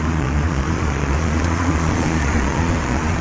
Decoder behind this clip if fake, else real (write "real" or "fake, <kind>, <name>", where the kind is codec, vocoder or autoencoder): fake, vocoder, Vocos